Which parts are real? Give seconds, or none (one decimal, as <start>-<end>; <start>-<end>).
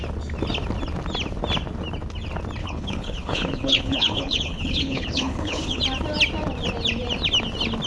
0.0-2.6; 5.8-7.9